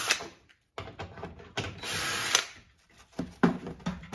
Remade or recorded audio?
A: recorded